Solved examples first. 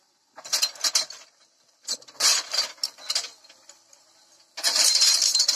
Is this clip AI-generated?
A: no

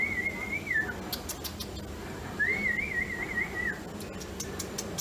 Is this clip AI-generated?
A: no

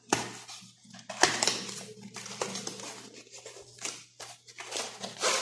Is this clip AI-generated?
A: no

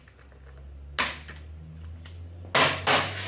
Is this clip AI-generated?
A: no